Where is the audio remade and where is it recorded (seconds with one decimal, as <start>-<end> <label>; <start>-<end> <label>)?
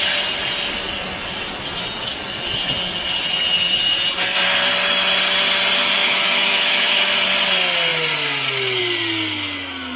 0.0-6.0 recorded; 6.0-7.1 remade; 7.1-10.0 recorded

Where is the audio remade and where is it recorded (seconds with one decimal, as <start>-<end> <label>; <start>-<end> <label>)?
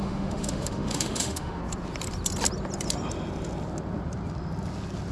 0.0-1.6 remade; 1.6-5.1 recorded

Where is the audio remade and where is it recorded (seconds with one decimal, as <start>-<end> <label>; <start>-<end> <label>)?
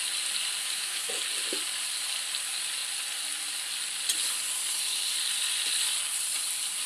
0.0-0.6 recorded; 0.6-1.1 remade; 1.1-6.9 recorded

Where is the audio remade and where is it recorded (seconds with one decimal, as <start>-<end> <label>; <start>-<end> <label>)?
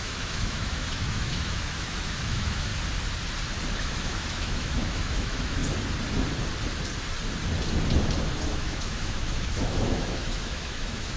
0.0-2.7 remade; 2.7-3.8 recorded; 3.8-5.6 remade; 5.6-8.5 recorded; 8.5-11.2 remade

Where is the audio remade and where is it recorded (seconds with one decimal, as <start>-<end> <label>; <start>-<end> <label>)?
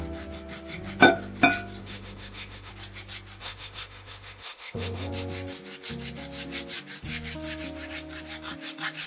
0.0-1.8 recorded; 1.8-2.7 remade; 2.7-3.4 recorded; 3.4-5.1 remade; 5.1-9.1 recorded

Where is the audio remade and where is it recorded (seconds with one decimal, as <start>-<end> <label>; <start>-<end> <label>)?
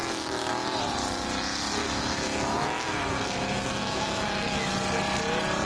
0.0-0.5 remade; 0.5-1.8 recorded; 1.8-4.7 remade; 4.7-5.7 recorded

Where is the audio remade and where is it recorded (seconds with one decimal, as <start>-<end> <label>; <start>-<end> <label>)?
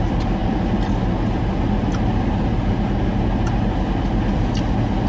0.0-5.1 recorded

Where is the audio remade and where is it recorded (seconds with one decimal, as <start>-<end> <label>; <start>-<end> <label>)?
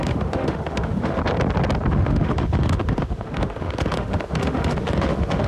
0.0-1.2 remade; 1.2-1.9 recorded; 1.9-5.5 remade